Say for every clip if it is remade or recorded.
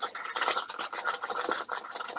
recorded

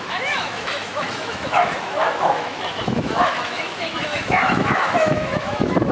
remade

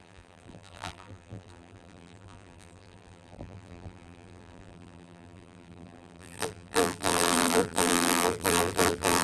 remade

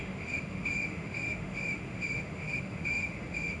remade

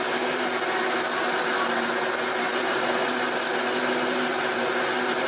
recorded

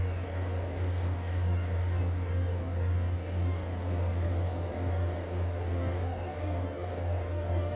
remade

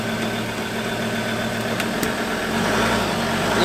recorded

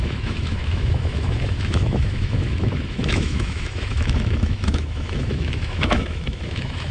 remade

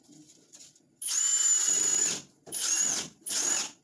recorded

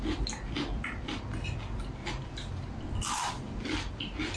recorded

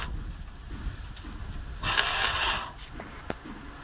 recorded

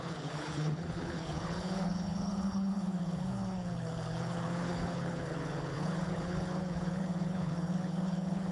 remade